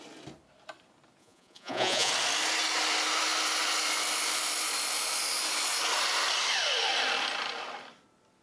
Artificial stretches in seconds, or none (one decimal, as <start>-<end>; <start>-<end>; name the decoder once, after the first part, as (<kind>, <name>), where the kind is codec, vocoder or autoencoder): 1.2-2.1 (vocoder, Vocos)